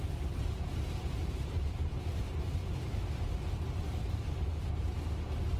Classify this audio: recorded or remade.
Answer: remade